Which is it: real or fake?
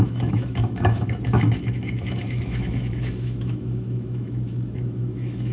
fake